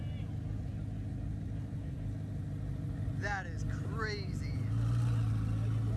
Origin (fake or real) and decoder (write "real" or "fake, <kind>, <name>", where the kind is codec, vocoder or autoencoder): real